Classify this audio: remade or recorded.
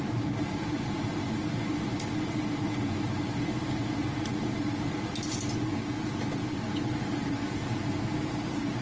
recorded